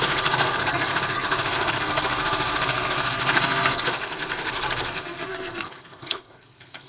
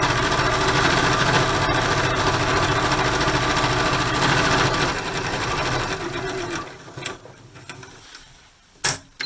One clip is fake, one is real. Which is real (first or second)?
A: second